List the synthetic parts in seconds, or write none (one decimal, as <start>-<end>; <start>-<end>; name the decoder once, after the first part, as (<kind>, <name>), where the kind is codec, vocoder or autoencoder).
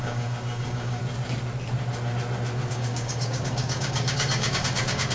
0.0-1.0 (codec, DAC); 2.7-5.1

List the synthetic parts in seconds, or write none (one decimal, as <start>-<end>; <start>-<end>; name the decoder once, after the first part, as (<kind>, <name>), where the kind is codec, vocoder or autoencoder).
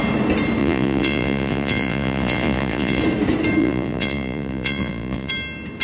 0.6-3.0 (vocoder, Vocos); 3.6-5.3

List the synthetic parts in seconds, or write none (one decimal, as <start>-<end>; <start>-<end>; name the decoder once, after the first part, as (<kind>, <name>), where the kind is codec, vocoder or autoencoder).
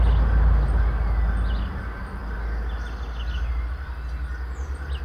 none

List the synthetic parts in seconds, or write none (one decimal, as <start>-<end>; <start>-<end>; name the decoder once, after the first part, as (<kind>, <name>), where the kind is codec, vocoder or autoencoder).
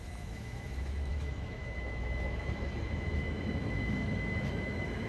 0.0-5.1 (autoencoder, DAC-VAE)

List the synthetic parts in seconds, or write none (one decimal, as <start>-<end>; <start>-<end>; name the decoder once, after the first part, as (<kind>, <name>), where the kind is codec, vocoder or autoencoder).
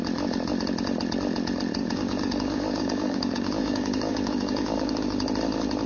1.8-5.3 (codec, DAC)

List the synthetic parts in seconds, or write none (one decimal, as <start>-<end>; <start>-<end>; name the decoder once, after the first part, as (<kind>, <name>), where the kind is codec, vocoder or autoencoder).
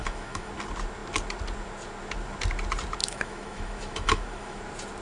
0.0-0.5 (autoencoder, DAC-VAE); 3.0-4.6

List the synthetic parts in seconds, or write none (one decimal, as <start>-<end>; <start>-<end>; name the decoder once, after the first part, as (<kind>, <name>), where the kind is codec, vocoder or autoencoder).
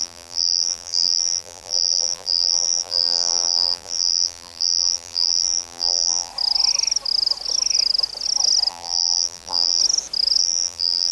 0.0-6.3 (vocoder, BigVGAN v2); 8.7-9.8; 10.4-11.1